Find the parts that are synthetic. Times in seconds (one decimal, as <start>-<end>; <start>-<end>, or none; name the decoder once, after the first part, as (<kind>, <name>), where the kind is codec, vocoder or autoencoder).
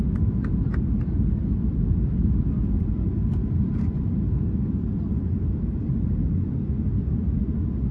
6.2-6.7 (vocoder, BigVGAN v2)